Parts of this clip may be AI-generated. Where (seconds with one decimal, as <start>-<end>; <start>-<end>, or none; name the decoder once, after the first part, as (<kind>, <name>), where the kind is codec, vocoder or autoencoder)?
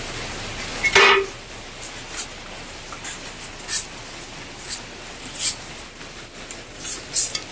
none